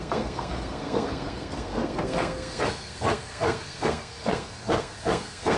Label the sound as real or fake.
fake